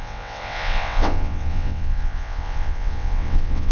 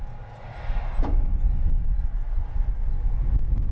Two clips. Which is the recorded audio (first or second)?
second